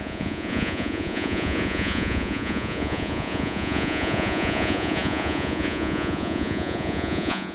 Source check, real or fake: fake